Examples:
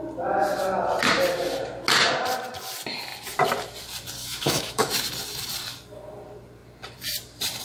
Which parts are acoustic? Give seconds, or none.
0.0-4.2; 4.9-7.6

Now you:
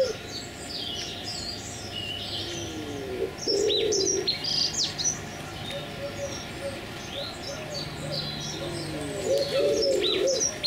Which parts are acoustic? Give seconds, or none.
0.0-10.7

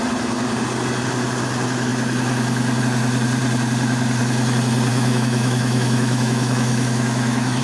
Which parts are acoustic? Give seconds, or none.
0.0-4.9

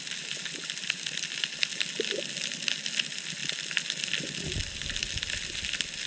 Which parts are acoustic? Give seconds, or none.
0.0-6.1

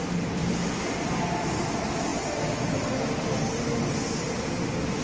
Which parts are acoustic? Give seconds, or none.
0.0-5.0

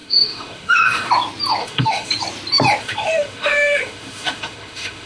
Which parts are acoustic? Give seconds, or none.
1.1-1.6; 2.1-2.8